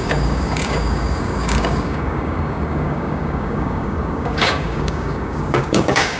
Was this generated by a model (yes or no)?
yes